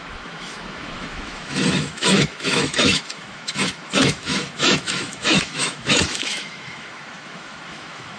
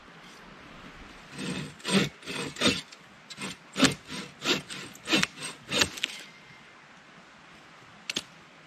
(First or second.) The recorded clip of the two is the second